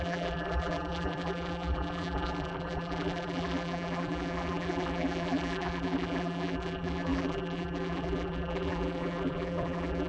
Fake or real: fake